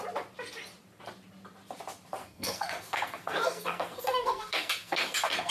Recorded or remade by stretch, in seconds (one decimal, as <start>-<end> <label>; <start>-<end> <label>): 0.0-2.2 recorded; 2.2-5.5 remade